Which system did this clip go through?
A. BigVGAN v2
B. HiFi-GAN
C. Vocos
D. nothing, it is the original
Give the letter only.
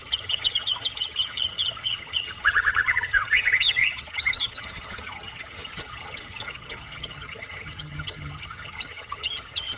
B